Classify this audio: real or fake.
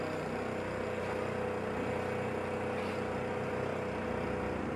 real